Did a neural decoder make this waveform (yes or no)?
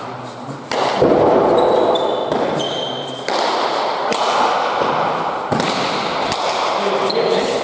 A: no